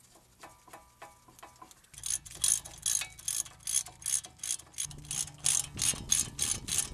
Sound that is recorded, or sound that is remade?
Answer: recorded